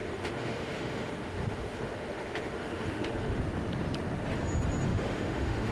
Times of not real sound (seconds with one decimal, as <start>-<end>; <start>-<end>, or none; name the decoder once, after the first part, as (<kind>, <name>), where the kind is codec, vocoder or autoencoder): 0.0-3.4 (autoencoder, DAC-VAE); 4.9-5.7